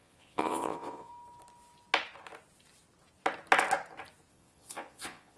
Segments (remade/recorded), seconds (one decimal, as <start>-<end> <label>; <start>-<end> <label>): 0.0-1.1 remade; 1.1-4.3 recorded; 4.3-5.4 remade